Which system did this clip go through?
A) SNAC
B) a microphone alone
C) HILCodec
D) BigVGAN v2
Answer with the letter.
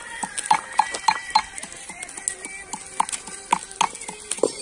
B